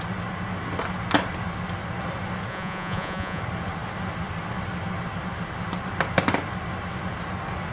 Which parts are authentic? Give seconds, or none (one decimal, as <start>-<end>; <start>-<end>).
0.0-2.5; 3.4-7.7